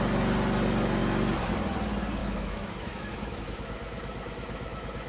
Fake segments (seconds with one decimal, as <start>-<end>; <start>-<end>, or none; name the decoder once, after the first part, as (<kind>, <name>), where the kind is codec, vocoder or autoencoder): 2.2-5.1 (autoencoder, DAC-VAE)